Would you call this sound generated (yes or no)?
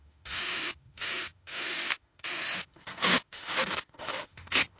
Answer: yes